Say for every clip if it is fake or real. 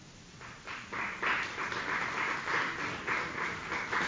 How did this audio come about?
real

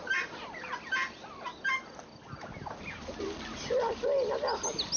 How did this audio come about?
real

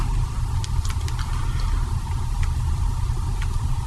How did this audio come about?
real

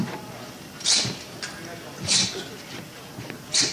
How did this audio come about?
real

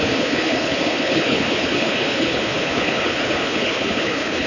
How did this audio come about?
fake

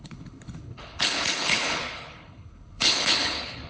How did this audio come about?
fake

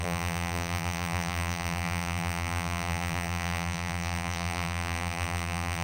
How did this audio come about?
fake